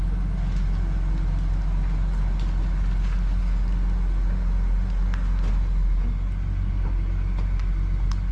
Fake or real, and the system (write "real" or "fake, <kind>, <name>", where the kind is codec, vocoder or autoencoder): real